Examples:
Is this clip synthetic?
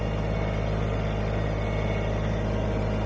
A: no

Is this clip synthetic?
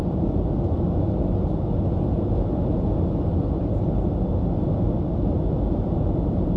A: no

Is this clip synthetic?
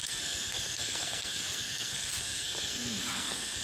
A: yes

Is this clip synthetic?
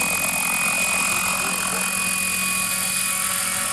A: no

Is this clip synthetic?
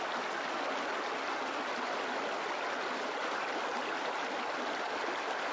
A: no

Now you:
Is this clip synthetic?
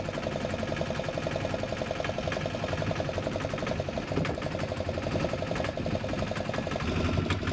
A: no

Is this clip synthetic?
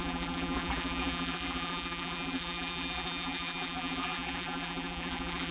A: yes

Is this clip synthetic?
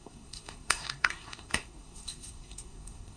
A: yes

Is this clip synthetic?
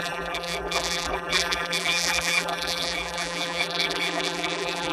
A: yes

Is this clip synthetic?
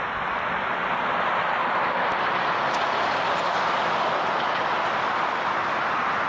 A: yes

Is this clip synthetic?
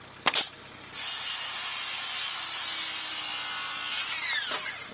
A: no